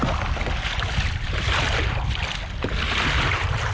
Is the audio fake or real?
real